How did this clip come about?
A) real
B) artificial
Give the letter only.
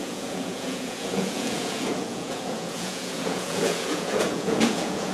B